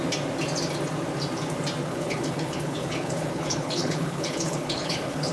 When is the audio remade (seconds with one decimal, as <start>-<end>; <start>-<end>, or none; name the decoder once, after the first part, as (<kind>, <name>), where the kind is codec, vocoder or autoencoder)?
1.8-5.3 (codec, HILCodec)